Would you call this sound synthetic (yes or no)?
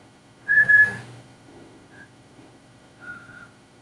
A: yes